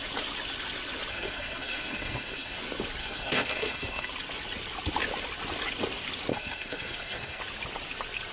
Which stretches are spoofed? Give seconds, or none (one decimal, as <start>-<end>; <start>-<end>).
1.1-2.6; 3.0-4.1; 6.3-7.4